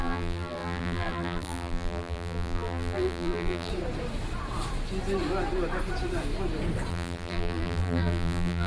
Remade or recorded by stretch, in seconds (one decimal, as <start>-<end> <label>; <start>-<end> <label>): 0.0-3.7 remade; 3.7-6.9 recorded; 6.9-8.7 remade